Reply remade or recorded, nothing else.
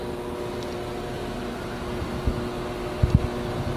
recorded